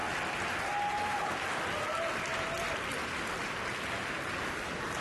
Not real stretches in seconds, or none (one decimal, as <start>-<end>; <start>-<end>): none